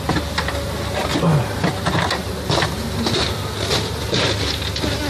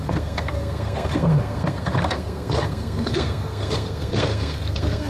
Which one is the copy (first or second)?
second